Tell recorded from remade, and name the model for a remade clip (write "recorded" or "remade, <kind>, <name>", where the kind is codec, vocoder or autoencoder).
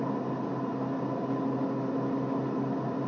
recorded